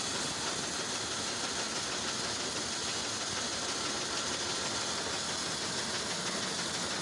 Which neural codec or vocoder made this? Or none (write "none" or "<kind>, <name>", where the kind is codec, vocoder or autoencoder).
none